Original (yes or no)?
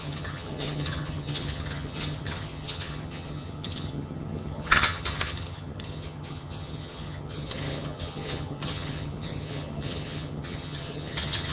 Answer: no